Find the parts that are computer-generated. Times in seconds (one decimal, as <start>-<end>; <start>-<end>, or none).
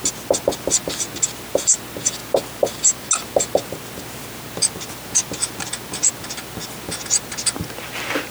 none